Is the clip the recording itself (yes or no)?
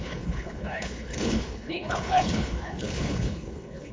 no